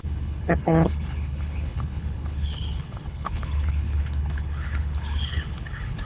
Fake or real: fake